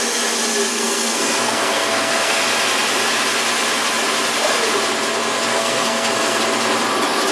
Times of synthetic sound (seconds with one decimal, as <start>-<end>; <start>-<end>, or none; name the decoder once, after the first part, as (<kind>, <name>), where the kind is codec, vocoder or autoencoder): 0.7-2.4 (codec, SNAC); 5.5-6.4